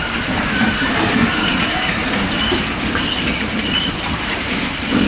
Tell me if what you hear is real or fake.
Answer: fake